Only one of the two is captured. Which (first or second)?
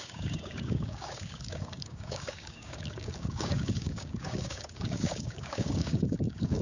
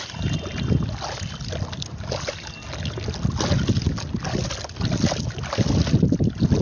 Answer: second